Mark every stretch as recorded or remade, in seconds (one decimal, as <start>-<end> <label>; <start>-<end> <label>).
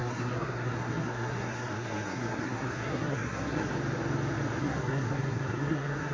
0.0-3.7 remade; 3.7-4.6 recorded; 4.6-6.1 remade